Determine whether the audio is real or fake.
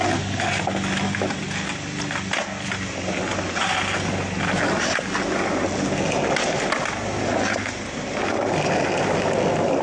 real